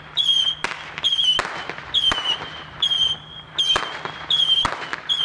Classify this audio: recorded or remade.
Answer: recorded